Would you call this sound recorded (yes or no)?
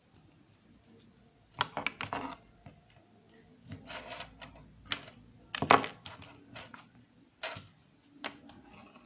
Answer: yes